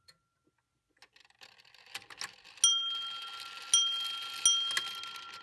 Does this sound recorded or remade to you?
recorded